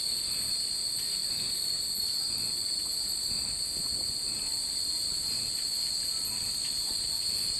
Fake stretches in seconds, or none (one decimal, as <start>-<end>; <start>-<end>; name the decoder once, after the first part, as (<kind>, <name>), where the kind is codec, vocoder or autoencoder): none